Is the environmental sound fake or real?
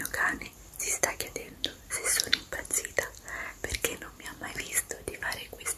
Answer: fake